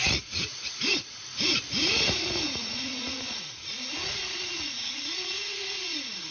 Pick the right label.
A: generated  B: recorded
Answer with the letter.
A